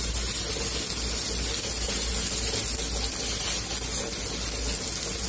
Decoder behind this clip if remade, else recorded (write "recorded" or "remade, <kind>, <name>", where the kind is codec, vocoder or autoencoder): recorded